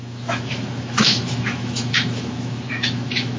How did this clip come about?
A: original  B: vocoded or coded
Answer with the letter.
B